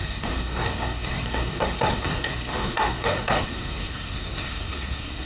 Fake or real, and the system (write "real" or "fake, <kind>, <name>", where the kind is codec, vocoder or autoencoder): fake, codec, SNAC